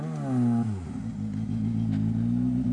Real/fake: real